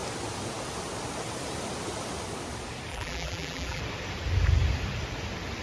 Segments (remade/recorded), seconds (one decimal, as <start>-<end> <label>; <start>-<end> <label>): 0.0-2.9 recorded; 2.9-3.8 remade; 3.8-5.6 recorded